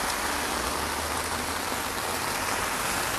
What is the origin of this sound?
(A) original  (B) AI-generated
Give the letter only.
A